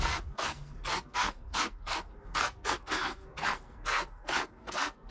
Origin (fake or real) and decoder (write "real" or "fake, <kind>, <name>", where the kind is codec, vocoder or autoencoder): fake, codec, SNAC